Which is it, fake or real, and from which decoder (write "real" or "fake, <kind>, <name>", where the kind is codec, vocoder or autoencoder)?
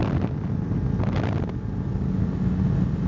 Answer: real